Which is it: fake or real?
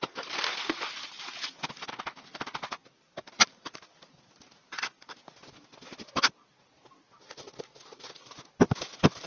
real